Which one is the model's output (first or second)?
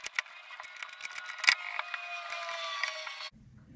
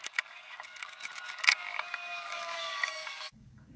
second